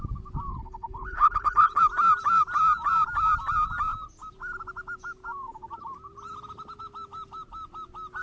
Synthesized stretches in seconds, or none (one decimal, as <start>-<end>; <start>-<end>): 0.5-1.8